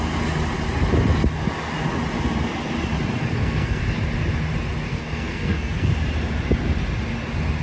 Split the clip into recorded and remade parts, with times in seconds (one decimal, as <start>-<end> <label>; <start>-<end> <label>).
0.0-3.3 recorded; 3.3-3.8 remade; 3.8-4.9 recorded; 4.9-5.9 remade; 5.9-7.6 recorded